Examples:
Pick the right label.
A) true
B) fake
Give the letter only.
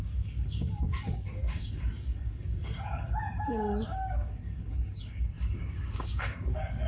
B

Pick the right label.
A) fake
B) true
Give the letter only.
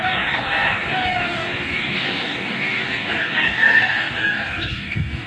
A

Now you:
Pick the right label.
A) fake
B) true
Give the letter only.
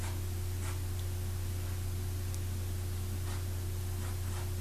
B